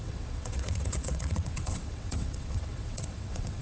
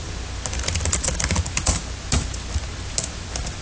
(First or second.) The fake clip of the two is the first